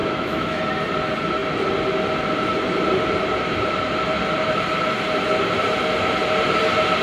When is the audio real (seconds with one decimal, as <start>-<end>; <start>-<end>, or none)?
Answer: 0.6-7.0